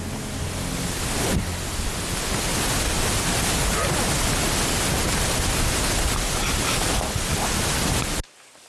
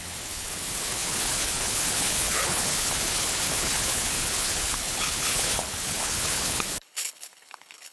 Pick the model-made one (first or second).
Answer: second